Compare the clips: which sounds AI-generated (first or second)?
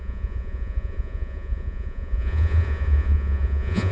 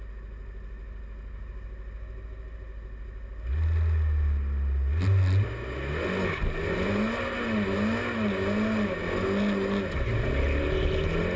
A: first